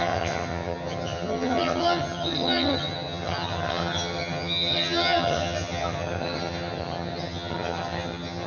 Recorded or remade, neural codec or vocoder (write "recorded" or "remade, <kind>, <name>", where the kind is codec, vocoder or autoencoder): remade, vocoder, HiFi-GAN